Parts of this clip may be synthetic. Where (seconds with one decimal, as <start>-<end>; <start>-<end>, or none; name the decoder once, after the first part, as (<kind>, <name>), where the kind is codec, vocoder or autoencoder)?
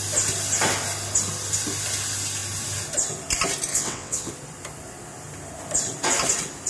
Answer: 3.7-4.3 (vocoder, WaveNeXt)